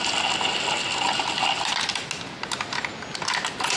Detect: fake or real real